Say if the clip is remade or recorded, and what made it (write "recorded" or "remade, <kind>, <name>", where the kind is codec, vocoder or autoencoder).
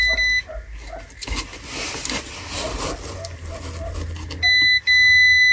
recorded